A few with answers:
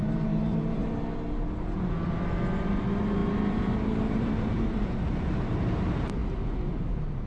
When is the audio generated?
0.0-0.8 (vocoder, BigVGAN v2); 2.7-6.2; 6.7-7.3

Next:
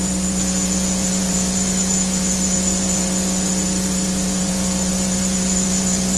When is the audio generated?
0.0-6.2 (vocoder, Vocos)

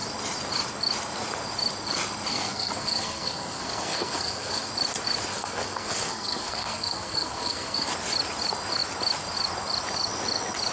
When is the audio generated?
2.3-4.7 (codec, SNAC); 5.3-7.9

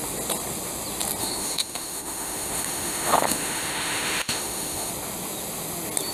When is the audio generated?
1.2-4.9 (autoencoder, DAC-VAE)

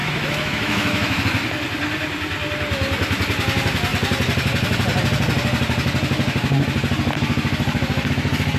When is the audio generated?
0.0-1.2 (autoencoder, DAC-VAE)

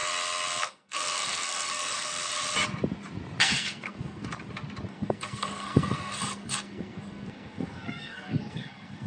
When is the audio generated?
0.6-2.3 (codec, SNAC); 3.4-4.3; 4.9-9.1

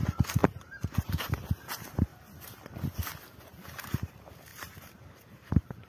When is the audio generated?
0.0-2.1 (vocoder, BigVGAN v2); 3.4-5.9